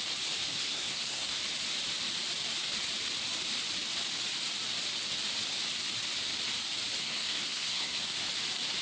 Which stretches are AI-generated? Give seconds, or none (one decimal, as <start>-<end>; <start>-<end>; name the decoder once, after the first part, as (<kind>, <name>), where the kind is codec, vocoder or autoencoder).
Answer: 0.6-1.4 (codec, SNAC); 7.0-8.0